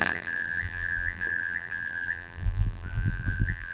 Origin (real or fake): fake